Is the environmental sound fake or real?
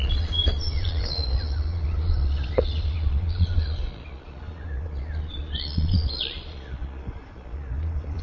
fake